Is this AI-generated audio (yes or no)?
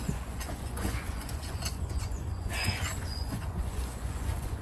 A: yes